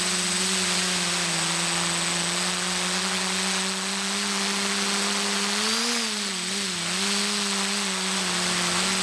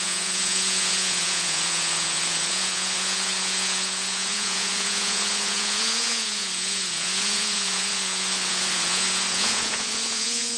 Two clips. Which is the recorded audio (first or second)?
first